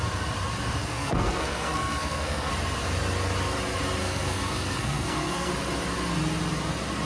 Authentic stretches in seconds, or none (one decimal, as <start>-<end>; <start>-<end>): 0.0-0.8; 2.5-4.0; 5.5-7.0